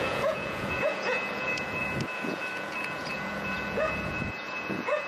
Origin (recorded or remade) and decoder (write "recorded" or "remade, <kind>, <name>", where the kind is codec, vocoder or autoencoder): remade, vocoder, Vocos